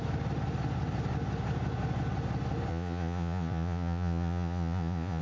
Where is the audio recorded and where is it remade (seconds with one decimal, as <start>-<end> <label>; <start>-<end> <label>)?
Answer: 0.0-2.7 recorded; 2.7-5.2 remade